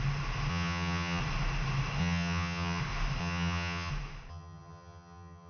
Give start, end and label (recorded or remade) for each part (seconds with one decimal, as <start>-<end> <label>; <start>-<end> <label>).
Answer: 0.0-0.5 recorded; 0.5-1.2 remade; 1.2-2.0 recorded; 2.0-2.8 remade; 2.8-3.2 recorded; 3.2-3.9 remade; 3.9-4.3 recorded; 4.3-5.5 remade